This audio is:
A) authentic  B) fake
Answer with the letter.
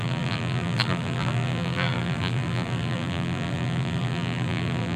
B